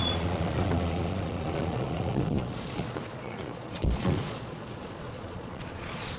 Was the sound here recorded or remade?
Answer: remade